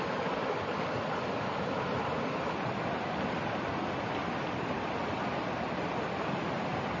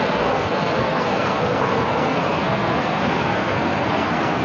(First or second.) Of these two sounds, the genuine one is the first